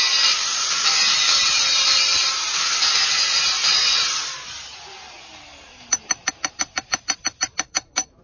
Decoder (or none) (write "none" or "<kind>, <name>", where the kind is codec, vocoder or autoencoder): vocoder, BigVGAN v2